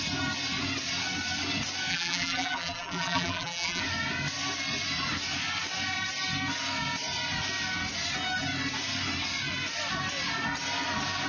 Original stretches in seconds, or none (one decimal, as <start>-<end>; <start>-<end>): 0.0-1.9; 3.8-11.3